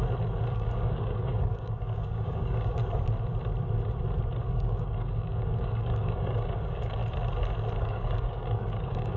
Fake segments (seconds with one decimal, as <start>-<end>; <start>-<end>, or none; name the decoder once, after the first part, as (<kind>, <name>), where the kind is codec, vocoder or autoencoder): 0.5-2.8 (codec, DAC); 4.4-7.0; 7.8-9.2